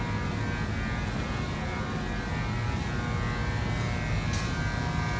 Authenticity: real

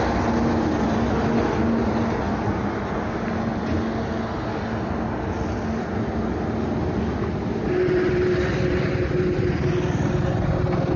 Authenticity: real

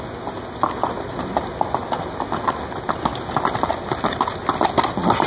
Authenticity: real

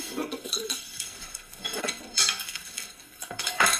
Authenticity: fake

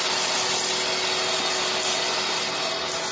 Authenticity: real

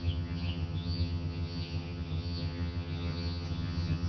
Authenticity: fake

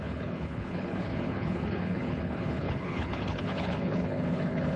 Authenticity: fake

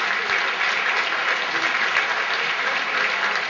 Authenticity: real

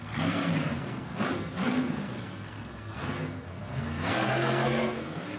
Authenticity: fake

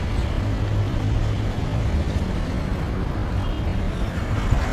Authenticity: real